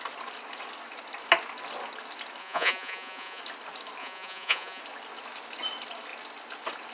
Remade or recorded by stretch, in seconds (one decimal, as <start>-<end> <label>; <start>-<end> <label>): 0.0-2.4 recorded; 2.4-3.4 remade; 3.4-4.0 recorded; 4.0-4.8 remade; 4.8-6.9 recorded